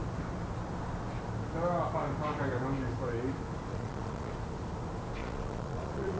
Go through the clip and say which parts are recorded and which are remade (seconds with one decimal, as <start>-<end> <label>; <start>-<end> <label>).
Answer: 0.0-3.7 recorded; 3.7-4.3 remade; 4.3-5.2 recorded; 5.2-6.2 remade